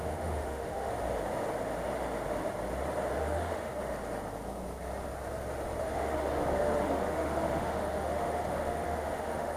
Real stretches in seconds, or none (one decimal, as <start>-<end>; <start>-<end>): 0.9-3.2; 3.7-5.8